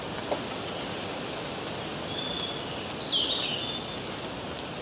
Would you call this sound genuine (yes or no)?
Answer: yes